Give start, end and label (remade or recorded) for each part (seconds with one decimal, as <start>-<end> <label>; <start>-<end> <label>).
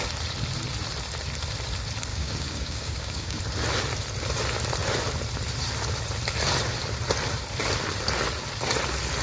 0.0-2.1 recorded; 2.1-3.4 remade; 3.4-9.2 recorded